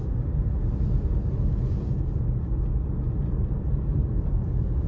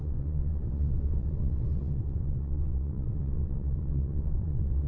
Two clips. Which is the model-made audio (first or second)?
second